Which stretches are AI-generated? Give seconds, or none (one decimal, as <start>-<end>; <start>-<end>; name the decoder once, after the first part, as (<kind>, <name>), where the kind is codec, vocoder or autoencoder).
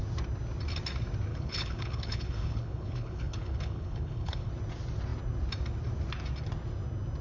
1.3-4.5 (codec, HILCodec)